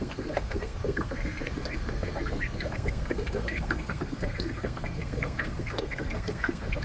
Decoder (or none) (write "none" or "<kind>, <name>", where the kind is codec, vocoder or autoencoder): codec, SNAC